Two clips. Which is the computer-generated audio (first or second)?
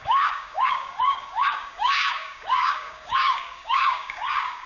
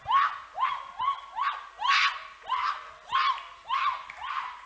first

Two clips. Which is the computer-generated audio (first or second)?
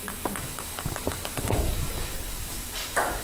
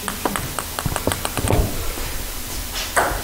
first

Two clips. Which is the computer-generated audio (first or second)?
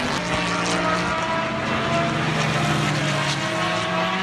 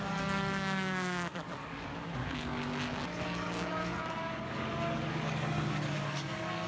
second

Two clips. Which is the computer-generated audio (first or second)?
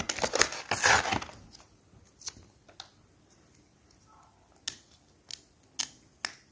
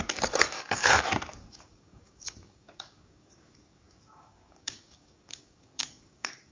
second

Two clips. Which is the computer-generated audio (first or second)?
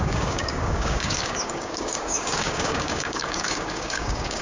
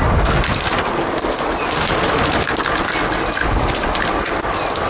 first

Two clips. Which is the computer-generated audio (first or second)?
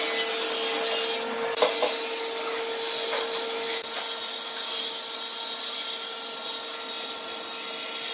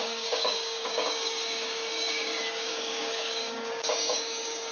second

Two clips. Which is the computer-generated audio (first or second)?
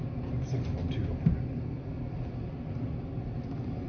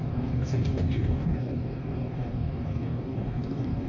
second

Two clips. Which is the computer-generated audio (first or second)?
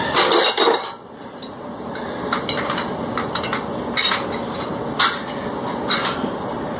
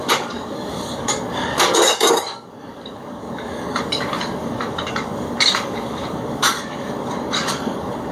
second